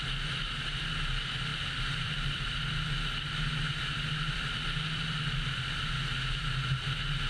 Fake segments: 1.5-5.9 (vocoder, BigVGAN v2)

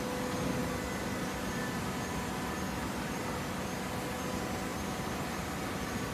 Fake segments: 4.7-6.1 (vocoder, BigVGAN v2)

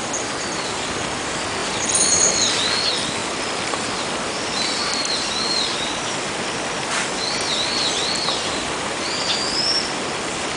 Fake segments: 1.6-2.2 (vocoder, BigVGAN v2); 3.2-5.0

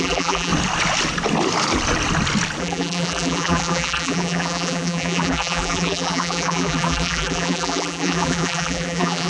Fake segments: 0.0-0.5 (vocoder, BigVGAN v2); 2.6-9.3